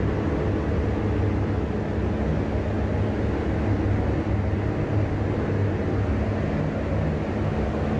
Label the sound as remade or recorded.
recorded